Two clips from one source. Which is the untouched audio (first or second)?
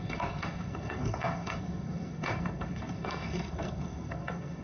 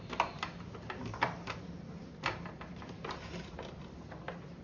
second